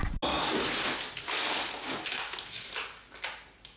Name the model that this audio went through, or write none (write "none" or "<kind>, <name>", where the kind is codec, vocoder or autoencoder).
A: none